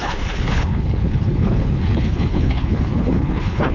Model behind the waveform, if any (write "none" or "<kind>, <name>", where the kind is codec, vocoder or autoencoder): codec, HILCodec